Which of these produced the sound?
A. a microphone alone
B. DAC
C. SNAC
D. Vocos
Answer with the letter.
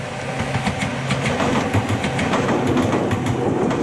A